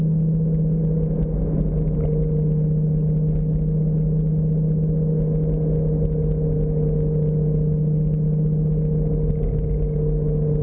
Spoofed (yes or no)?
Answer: no